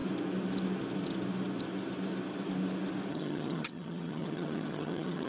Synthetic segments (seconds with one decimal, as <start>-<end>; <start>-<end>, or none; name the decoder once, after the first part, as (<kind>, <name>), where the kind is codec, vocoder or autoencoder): 3.1-5.3 (vocoder, HiFi-GAN)